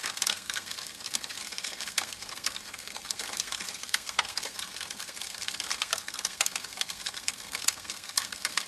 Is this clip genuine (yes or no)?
no